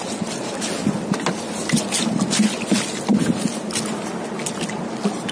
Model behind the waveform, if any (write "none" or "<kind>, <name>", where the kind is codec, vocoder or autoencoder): none